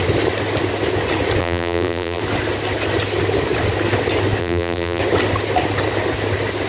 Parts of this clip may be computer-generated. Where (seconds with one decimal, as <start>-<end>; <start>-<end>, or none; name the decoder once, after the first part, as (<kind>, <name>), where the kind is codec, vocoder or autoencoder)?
1.4-2.2 (vocoder, BigVGAN v2); 4.4-5.0